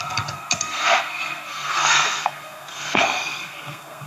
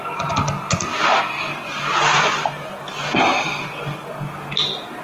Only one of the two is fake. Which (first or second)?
first